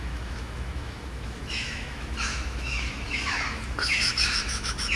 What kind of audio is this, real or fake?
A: fake